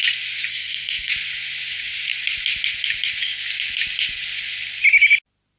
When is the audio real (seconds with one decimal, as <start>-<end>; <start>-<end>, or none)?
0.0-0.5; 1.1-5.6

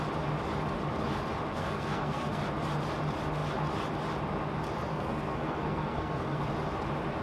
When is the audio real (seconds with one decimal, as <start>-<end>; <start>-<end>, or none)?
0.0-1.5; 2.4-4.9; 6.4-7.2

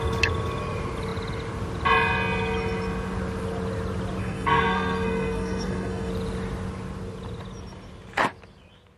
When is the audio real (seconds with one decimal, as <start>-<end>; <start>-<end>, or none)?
0.0-4.2; 6.1-9.0